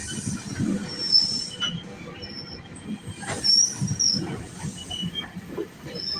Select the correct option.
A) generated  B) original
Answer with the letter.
B